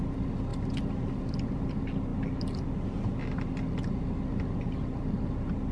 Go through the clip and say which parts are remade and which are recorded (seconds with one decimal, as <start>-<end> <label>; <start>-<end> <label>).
0.0-5.7 recorded